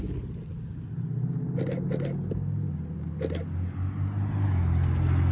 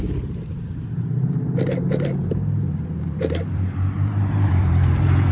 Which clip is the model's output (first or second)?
second